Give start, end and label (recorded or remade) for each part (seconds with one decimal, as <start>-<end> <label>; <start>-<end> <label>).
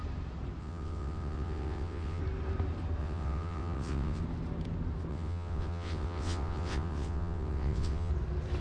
0.0-0.6 recorded; 0.6-2.2 remade; 2.2-3.0 recorded; 3.0-4.2 remade; 4.2-5.1 recorded; 5.1-8.1 remade; 8.1-8.6 recorded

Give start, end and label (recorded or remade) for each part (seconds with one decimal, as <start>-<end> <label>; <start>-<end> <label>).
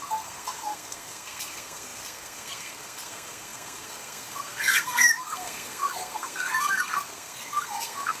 0.0-8.2 remade